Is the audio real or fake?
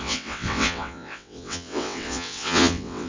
fake